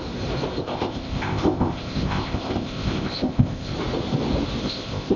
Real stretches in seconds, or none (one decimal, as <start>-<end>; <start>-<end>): 0.0-0.6; 3.7-4.6